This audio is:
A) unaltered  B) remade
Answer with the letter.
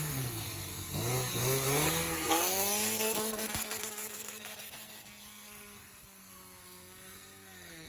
B